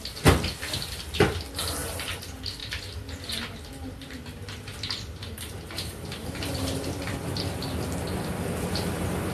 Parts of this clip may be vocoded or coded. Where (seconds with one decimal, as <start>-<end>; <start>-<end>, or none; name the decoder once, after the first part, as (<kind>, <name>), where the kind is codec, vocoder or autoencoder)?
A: 2.6-3.3 (vocoder, BigVGAN v2); 4.7-7.0